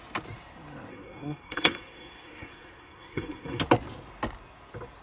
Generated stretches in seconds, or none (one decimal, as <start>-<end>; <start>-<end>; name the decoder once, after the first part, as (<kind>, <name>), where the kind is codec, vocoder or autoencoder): 0.9-3.6 (codec, SNAC)